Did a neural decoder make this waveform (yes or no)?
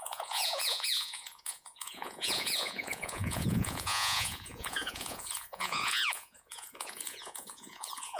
yes